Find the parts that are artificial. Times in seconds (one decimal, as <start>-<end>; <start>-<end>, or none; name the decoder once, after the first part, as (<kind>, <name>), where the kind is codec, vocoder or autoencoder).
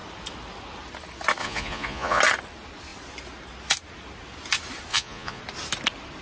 1.4-2.2 (vocoder, Vocos); 4.9-5.4